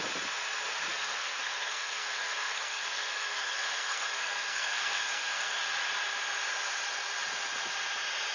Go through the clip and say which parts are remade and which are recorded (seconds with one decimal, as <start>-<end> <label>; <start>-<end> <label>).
0.0-0.9 recorded; 0.9-5.6 remade; 5.6-8.3 recorded